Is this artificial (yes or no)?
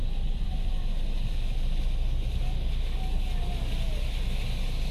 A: no